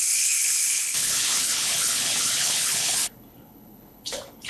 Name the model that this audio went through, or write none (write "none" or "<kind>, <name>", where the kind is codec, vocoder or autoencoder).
codec, HILCodec